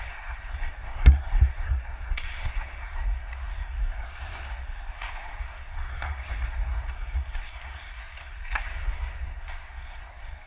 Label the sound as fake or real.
fake